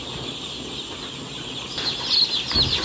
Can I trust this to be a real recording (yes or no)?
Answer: yes